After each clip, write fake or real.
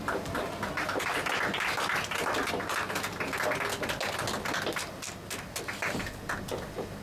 real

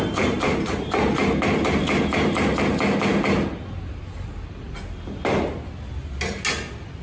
real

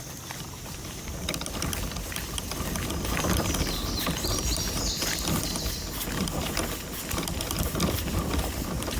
real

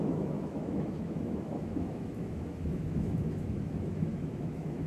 fake